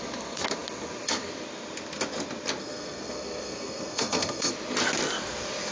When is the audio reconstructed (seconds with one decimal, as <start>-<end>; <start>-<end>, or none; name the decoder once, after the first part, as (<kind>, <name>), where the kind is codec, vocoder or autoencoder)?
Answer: 2.6-4.5 (codec, SNAC)